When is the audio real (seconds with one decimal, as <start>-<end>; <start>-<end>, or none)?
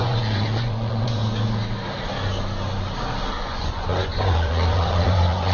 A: 1.2-3.4